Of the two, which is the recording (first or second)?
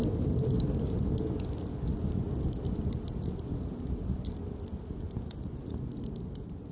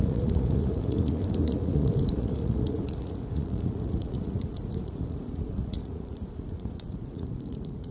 first